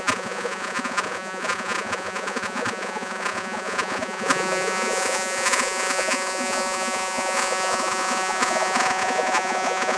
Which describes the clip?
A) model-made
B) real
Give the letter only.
A